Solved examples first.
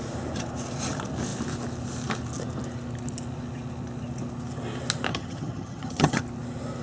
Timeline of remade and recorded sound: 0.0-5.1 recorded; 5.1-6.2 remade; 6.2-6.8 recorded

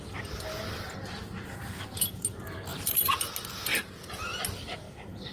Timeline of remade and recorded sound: 0.0-2.7 recorded; 2.7-3.3 remade; 3.3-3.7 recorded; 3.7-4.2 remade; 4.2-5.3 recorded

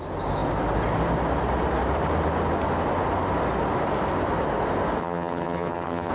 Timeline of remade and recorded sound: 0.0-5.0 recorded; 5.0-6.1 remade

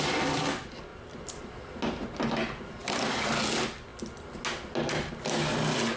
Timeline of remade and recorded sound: 0.0-0.9 recorded; 0.9-1.4 remade; 1.4-6.0 recorded